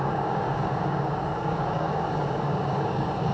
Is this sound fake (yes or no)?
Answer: yes